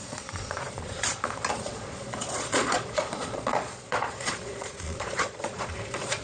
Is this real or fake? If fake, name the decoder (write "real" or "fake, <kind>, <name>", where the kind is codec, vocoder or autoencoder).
fake, vocoder, Vocos